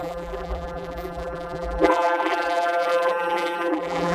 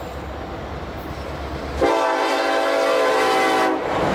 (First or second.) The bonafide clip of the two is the second